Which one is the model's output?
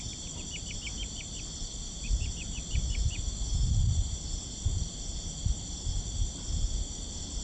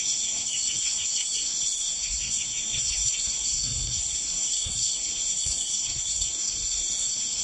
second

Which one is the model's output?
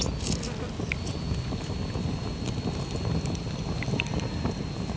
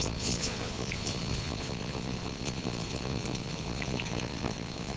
second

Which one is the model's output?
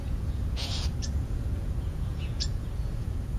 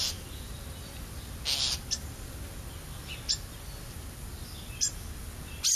first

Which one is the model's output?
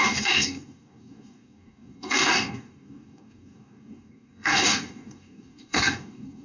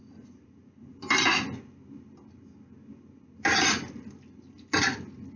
first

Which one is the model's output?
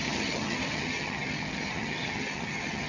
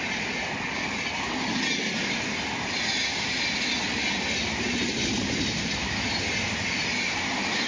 first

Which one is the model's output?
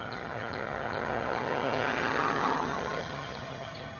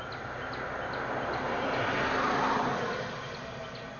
first